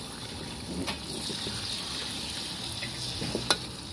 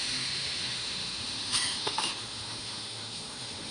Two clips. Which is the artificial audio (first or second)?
second